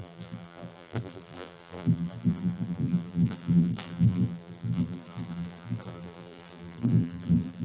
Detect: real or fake fake